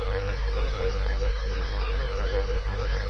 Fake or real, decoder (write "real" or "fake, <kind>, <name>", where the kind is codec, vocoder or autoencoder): fake, codec, SNAC